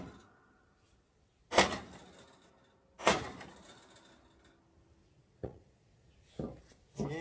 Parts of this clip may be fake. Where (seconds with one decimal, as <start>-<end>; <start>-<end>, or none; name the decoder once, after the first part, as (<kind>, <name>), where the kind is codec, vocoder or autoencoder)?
5.0-6.1 (vocoder, Vocos)